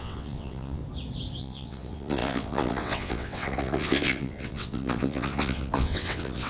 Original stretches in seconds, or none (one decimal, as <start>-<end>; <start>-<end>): 0.8-1.4